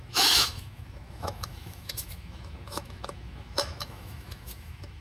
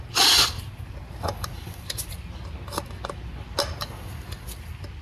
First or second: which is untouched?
second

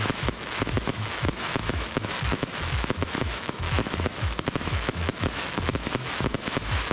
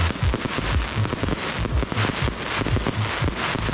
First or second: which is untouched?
second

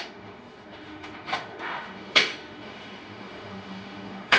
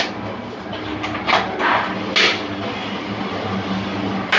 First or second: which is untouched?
second